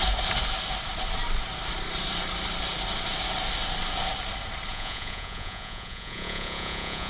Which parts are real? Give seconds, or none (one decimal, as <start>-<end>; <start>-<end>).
0.0-4.7